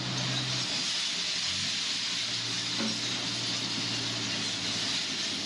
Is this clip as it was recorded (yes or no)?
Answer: yes